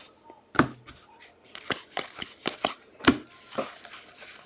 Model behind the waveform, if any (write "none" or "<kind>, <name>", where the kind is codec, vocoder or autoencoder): none